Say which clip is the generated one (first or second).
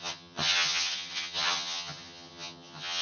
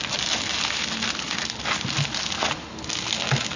first